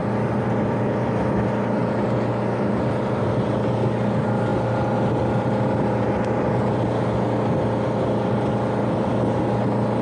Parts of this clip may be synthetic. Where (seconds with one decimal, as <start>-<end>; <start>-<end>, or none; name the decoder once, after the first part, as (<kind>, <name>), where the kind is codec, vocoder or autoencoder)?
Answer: none